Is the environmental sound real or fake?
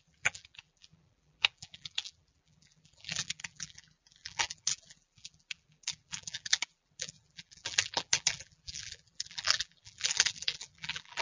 fake